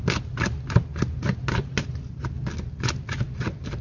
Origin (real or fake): real